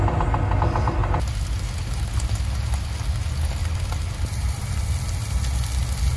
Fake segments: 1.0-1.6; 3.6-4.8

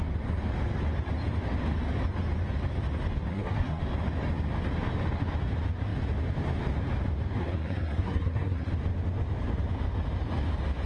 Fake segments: 3.3-3.8; 7.4-8.7

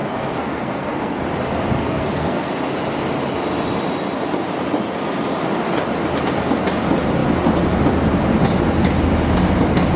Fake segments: 0.0-1.2; 1.8-2.5